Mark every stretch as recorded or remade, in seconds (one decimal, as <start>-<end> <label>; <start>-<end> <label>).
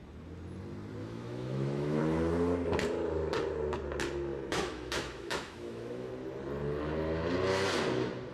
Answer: 0.0-1.0 recorded; 1.0-2.0 remade; 2.0-4.5 recorded; 4.5-6.1 remade; 6.1-8.3 recorded